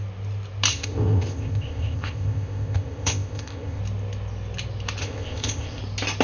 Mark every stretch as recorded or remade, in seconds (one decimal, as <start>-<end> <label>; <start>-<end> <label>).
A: 0.0-0.7 recorded; 0.7-3.8 remade; 3.8-5.0 recorded; 5.0-5.8 remade; 5.8-6.2 recorded